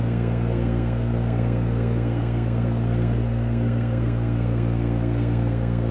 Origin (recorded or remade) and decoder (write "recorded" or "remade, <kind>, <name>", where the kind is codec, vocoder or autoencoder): remade, codec, SNAC